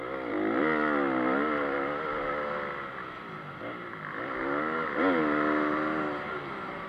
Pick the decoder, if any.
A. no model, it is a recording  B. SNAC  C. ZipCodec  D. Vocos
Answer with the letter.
A